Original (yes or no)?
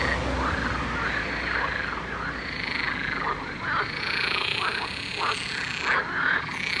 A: yes